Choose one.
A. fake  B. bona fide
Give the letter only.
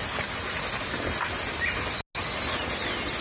B